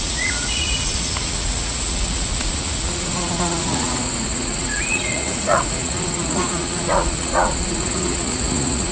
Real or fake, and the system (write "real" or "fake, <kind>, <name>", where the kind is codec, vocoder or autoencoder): fake, vocoder, Vocos